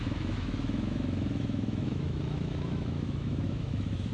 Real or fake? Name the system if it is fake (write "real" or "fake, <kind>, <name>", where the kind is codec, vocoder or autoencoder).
fake, autoencoder, DAC-VAE